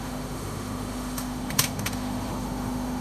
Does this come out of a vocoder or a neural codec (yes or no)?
yes